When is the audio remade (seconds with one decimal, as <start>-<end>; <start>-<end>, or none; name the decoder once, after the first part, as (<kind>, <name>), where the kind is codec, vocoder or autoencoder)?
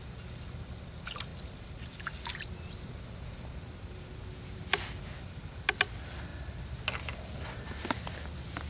none